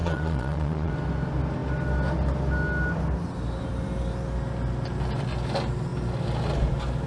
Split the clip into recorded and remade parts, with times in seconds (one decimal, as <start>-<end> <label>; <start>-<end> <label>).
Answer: 0.0-0.9 remade; 0.9-7.1 recorded